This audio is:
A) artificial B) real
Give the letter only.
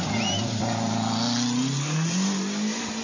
B